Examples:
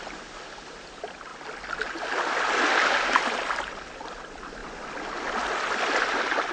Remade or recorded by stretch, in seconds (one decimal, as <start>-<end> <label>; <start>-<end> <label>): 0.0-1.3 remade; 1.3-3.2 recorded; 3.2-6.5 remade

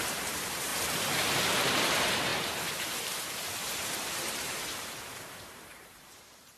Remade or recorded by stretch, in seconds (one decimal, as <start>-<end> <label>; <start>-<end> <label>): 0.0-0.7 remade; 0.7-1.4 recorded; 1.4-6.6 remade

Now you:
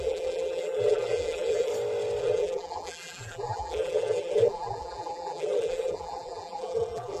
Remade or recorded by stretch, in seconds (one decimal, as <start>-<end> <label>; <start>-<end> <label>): 0.0-1.7 remade; 1.7-2.2 recorded; 2.2-7.2 remade

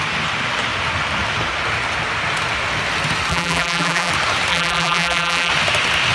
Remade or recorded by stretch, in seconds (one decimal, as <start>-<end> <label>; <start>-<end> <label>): 0.0-3.3 recorded; 3.3-4.1 remade; 4.1-4.5 recorded; 4.5-5.5 remade; 5.5-6.1 recorded